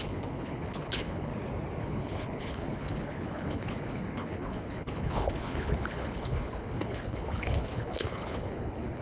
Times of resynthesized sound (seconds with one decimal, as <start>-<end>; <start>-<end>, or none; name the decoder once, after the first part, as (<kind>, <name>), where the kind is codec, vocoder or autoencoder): 0.0-1.3 (codec, HILCodec); 1.8-9.0